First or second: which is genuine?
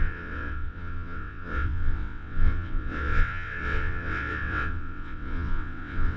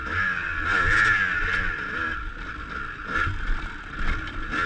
second